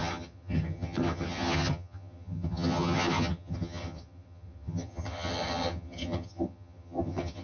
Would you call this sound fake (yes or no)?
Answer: yes